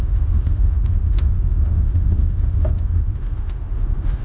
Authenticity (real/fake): fake